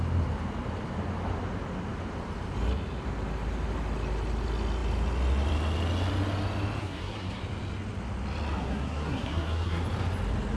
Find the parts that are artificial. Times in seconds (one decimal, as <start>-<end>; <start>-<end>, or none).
6.8-7.4; 8.6-9.8